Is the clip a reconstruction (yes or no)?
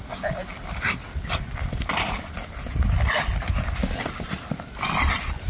no